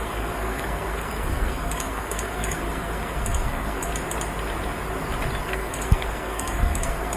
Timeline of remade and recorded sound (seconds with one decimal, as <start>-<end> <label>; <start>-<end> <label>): 0.0-3.9 remade; 3.9-5.4 recorded; 5.4-7.2 remade